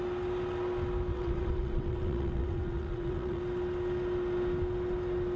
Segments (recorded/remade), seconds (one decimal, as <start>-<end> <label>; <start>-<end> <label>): 0.0-1.1 recorded; 1.1-3.4 remade; 3.4-5.4 recorded